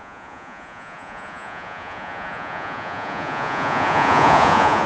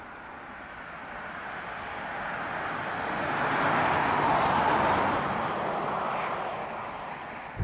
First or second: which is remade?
first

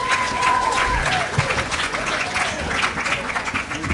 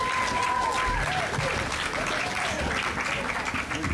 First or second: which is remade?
first